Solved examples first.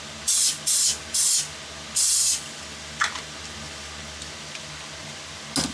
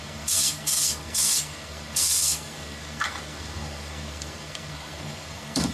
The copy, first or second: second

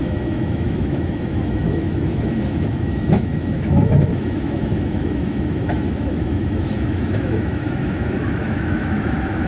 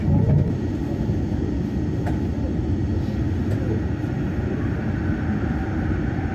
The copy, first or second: first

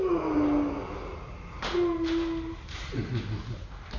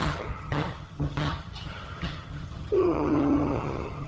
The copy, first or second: second